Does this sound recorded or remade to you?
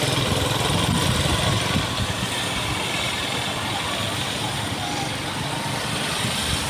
recorded